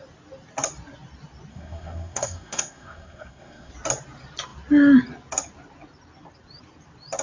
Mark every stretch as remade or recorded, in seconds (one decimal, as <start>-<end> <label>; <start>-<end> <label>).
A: 0.0-1.5 recorded; 1.5-3.7 remade; 3.7-7.2 recorded